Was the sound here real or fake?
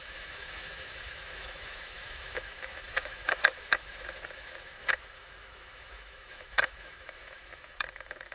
fake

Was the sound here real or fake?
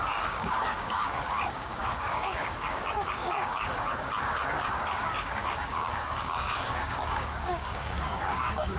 fake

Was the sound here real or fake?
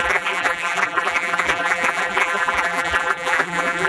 fake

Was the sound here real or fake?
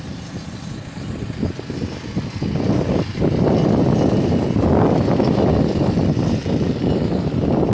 real